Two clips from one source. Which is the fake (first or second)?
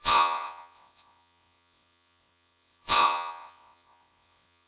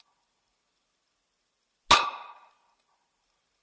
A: first